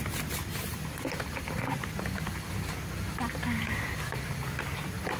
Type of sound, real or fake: real